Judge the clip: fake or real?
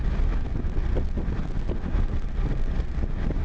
real